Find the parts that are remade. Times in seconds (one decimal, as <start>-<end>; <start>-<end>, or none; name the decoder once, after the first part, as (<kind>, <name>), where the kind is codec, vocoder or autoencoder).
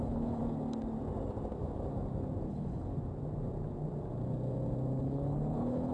0.0-0.4 (codec, HILCodec); 2.5-2.9; 5.0-5.9